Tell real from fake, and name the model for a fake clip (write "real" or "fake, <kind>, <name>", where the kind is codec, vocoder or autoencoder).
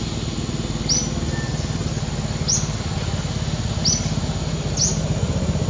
real